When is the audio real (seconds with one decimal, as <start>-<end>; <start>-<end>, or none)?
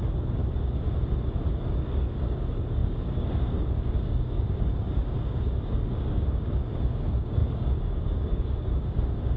0.4-1.6